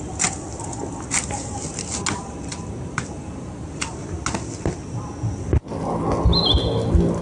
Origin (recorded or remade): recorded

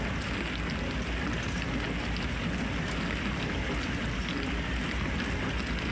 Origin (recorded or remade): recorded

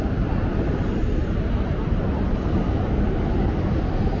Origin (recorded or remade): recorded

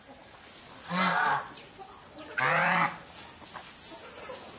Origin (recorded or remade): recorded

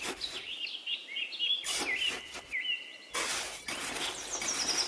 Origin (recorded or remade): recorded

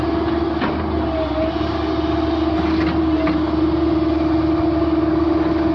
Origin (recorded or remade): recorded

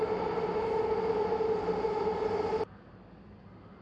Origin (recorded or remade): recorded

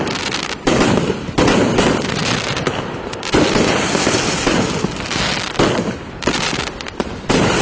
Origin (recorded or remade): recorded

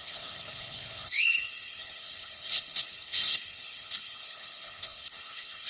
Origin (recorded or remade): remade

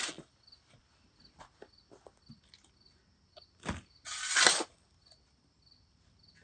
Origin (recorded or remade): recorded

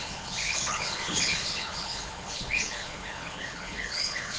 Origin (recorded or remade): remade